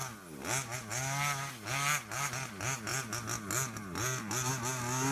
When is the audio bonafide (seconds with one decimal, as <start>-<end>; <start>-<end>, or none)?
0.0-5.1